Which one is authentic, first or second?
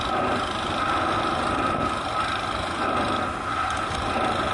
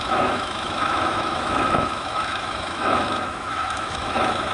first